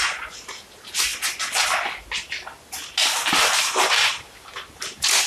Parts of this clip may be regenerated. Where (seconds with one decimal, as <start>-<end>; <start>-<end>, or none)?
none